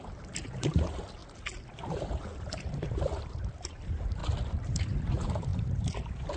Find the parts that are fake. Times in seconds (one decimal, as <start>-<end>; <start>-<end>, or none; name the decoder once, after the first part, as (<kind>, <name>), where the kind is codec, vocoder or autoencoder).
0.0-1.2 (vocoder, BigVGAN v2); 1.9-4.2; 5.1-5.5